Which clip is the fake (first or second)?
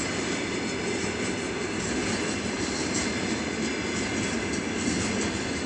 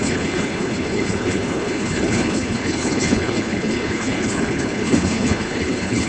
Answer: second